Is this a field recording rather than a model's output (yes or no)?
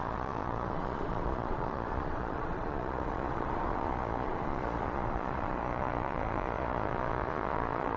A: no